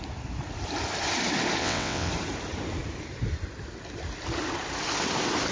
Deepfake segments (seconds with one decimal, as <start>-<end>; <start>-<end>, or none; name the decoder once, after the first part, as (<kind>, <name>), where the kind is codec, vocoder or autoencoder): 1.6-2.1 (vocoder, WaveNeXt)